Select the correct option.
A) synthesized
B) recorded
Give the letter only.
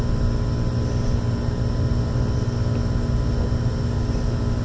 B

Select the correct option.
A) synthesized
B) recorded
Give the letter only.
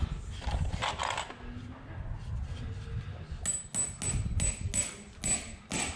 B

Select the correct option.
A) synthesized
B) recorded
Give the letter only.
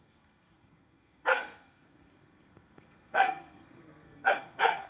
A